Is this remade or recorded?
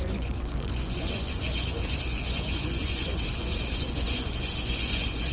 remade